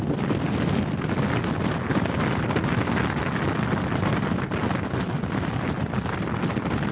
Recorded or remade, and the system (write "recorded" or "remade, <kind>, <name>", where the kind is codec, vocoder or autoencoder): recorded